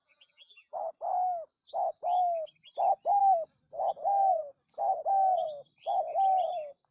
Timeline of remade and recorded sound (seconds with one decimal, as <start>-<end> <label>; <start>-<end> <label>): 0.0-0.9 remade; 0.9-6.9 recorded